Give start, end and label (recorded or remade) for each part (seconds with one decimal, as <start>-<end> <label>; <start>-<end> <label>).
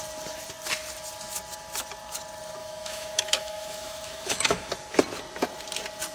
0.0-2.6 recorded; 2.6-4.7 remade; 4.7-6.1 recorded